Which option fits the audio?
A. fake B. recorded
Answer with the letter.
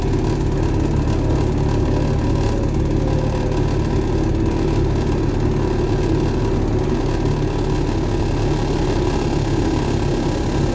B